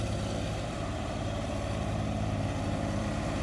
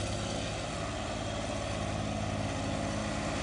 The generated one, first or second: first